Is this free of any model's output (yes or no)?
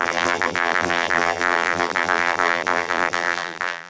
no